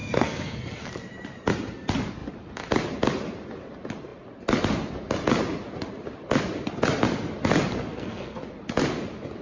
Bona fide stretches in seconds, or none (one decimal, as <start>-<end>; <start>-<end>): 0.9-7.9; 8.4-9.4